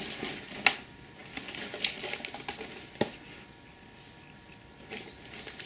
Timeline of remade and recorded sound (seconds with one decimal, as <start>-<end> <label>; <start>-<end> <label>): 0.0-5.7 recorded